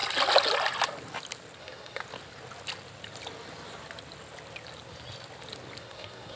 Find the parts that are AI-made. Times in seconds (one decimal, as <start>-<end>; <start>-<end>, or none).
1.6-2.0; 5.8-6.4